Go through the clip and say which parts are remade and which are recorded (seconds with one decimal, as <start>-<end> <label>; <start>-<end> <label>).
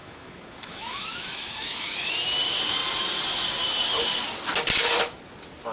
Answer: 0.0-2.1 remade; 2.1-5.7 recorded